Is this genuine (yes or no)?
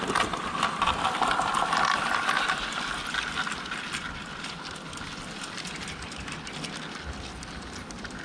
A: yes